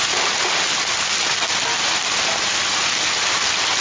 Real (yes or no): yes